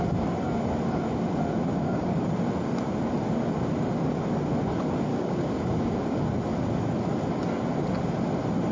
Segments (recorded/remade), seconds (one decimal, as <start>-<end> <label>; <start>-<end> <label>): 0.0-1.7 recorded; 1.7-2.2 remade; 2.2-5.1 recorded; 5.1-6.2 remade; 6.2-8.7 recorded